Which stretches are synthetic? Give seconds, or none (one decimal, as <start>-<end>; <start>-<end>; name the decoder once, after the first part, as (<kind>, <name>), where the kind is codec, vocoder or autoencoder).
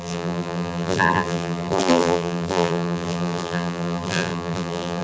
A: 0.0-5.0 (vocoder, BigVGAN v2)